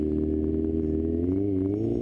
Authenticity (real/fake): real